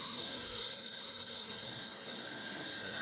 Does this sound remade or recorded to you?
remade